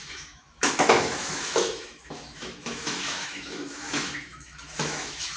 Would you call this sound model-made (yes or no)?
yes